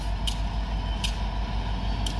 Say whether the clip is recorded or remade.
recorded